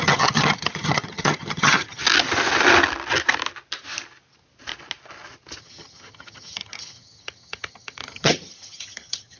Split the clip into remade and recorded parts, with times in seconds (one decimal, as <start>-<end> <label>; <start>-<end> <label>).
0.0-2.0 remade; 2.0-5.6 recorded; 5.6-9.4 remade